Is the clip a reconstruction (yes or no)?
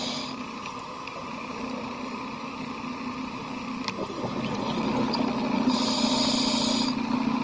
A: no